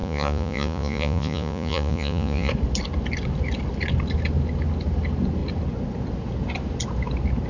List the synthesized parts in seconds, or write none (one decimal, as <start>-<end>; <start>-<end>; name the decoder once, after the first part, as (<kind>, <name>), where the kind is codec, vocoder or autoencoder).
0.0-2.5 (vocoder, Vocos)